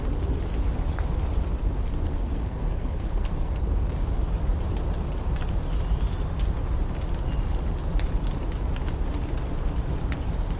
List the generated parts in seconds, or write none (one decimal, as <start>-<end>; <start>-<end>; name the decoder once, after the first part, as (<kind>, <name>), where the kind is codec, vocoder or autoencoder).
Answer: 1.9-3.6 (codec, SNAC)

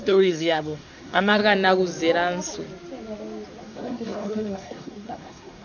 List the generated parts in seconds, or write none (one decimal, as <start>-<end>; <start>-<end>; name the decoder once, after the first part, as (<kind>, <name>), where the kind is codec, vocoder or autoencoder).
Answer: 0.0-1.4 (codec, SNAC); 3.6-5.6

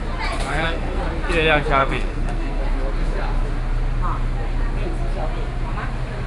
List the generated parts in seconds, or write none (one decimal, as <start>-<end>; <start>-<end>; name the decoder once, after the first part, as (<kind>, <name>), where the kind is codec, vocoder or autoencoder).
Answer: 0.5-1.0 (codec, SNAC); 1.8-2.6

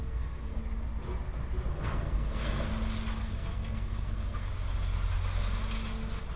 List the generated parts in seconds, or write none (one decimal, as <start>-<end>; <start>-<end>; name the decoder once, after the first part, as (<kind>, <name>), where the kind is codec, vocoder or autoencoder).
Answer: 0.0-0.6 (codec, SNAC); 1.7-2.7; 3.2-4.5

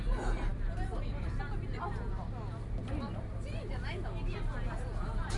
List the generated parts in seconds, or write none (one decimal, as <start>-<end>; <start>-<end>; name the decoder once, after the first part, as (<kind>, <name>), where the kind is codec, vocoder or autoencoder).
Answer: none

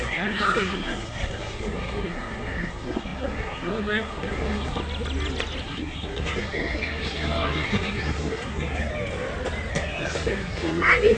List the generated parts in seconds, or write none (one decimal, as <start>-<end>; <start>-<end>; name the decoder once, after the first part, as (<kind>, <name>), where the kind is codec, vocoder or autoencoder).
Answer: 0.0-4.8 (codec, SNAC); 5.6-8.9; 9.7-11.2

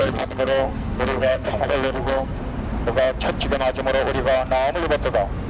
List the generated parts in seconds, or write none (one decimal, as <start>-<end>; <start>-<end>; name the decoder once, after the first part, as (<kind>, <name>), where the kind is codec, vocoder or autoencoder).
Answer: 0.0-2.4 (codec, SNAC)